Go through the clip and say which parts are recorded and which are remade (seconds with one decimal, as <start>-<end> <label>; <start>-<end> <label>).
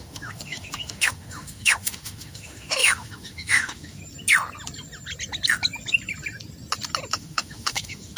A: 0.0-4.0 remade; 4.0-7.1 recorded; 7.1-8.2 remade